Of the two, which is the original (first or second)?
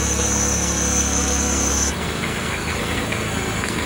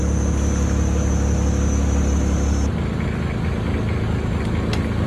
second